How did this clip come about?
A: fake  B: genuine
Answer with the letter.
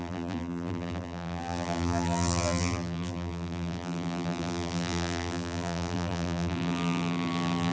A